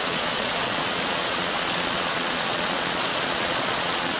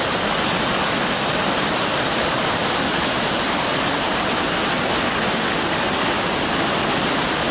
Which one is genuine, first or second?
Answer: second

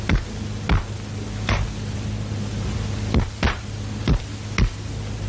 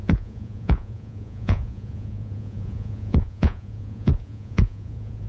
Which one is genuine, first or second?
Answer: first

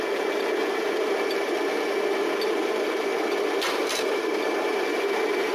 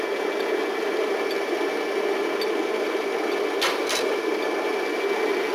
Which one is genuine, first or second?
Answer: second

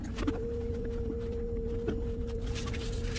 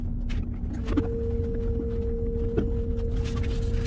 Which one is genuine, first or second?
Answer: second